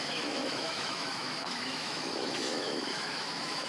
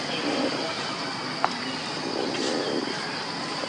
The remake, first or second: first